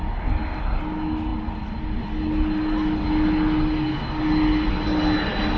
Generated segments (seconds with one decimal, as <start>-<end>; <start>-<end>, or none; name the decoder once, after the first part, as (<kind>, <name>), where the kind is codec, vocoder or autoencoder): none

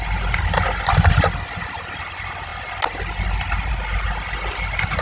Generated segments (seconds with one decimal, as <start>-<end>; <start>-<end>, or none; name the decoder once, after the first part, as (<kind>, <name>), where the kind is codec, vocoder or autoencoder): none

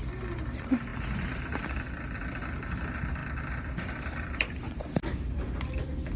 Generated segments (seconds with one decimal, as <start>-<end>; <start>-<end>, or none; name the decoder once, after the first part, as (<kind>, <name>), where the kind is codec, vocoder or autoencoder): none